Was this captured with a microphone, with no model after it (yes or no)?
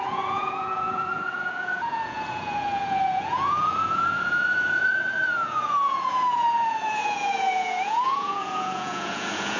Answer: no